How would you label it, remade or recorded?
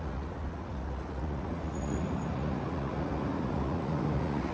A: remade